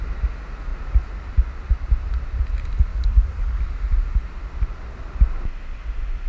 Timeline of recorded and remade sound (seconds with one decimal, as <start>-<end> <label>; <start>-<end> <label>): 0.0-2.9 recorded; 2.9-3.6 remade; 3.6-6.3 recorded